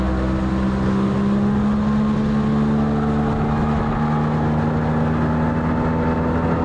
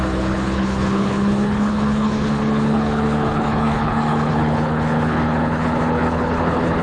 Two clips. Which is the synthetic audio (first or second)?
second